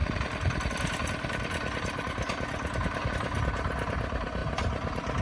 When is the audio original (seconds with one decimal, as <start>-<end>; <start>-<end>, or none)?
0.0-5.2